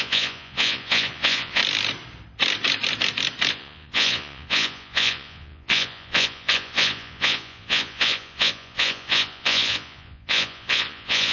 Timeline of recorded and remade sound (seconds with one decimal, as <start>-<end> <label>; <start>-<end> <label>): 0.0-1.6 remade; 1.6-3.5 recorded; 3.5-11.3 remade